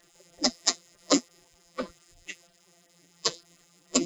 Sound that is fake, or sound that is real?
fake